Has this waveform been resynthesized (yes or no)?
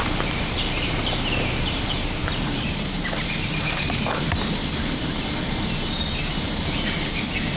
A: yes